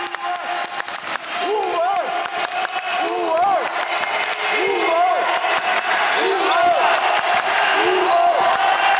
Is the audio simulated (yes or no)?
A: no